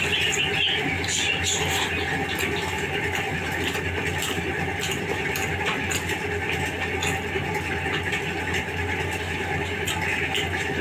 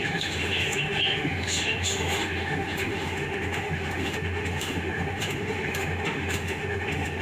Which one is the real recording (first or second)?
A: first